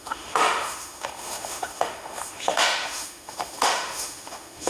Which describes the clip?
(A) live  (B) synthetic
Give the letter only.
B